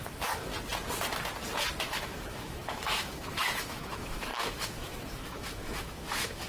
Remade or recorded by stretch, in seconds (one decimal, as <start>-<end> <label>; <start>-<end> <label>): 0.0-0.5 remade; 0.5-1.8 recorded; 1.8-6.5 remade